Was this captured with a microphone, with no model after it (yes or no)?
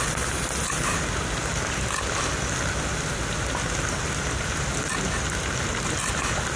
yes